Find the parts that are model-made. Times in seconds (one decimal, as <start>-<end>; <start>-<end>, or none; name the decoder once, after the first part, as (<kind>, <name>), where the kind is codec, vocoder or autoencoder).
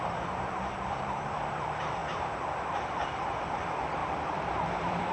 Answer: 0.0-2.0 (vocoder, BigVGAN v2); 2.7-5.1